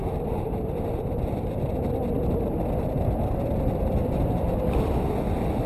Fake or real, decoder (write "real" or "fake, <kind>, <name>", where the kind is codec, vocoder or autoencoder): real